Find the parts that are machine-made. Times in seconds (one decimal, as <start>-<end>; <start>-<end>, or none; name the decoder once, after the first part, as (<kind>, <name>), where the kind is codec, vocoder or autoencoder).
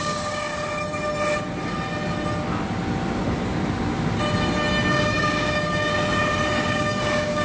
0.0-0.5 (codec, DAC); 4.9-5.9; 6.7-7.4